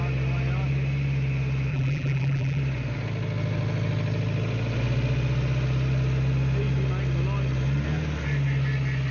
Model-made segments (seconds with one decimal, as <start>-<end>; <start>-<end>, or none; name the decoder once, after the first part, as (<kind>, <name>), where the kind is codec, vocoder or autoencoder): 1.7-2.6 (vocoder, BigVGAN v2)

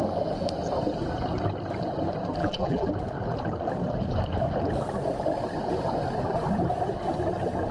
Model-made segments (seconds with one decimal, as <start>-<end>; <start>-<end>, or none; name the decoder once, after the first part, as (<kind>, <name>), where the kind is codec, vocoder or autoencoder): 2.4-2.9 (vocoder, BigVGAN v2)

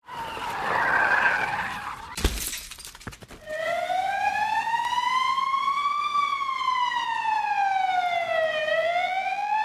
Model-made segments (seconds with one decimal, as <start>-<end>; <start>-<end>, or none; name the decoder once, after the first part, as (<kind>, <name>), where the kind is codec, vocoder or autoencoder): 8.8-9.6 (vocoder, BigVGAN v2)

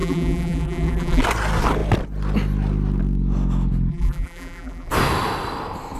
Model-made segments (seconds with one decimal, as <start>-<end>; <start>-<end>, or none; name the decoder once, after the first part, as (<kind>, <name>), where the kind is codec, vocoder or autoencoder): 0.0-1.2 (vocoder, BigVGAN v2); 3.9-4.9

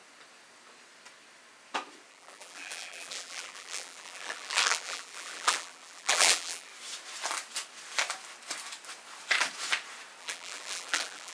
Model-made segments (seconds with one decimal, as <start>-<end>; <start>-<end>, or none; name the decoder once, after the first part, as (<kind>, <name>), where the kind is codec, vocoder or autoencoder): 2.1-6.7 (vocoder, BigVGAN v2); 10.2-11.3

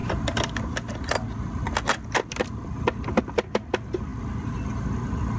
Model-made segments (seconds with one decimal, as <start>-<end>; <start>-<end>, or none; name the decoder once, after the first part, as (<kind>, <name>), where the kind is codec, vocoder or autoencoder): 0.0-3.2 (vocoder, BigVGAN v2)

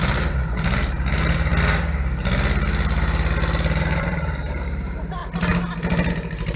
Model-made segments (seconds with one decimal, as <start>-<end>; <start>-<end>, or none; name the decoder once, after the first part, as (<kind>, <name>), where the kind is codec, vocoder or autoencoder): 0.0-1.5 (vocoder, BigVGAN v2); 3.8-5.2; 6.1-6.6